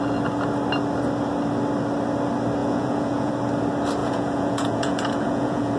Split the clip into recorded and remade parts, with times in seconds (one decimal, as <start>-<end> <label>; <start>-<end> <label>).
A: 0.0-2.6 recorded; 2.6-3.3 remade; 3.3-4.0 recorded; 4.0-5.8 remade